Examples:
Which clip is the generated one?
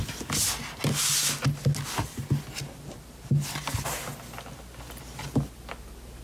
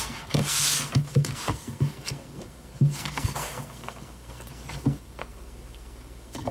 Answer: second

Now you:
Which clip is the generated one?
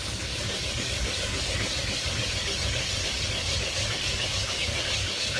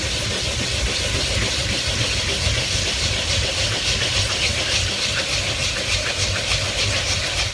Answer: first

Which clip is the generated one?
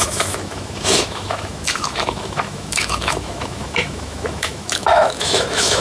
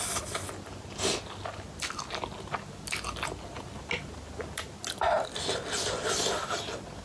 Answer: first